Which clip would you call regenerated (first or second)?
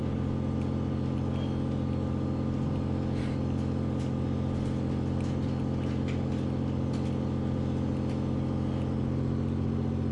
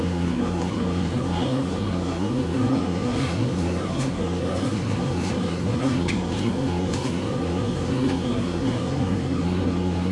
second